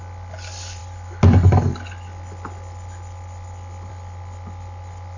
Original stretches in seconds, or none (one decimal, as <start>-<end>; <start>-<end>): 0.0-5.2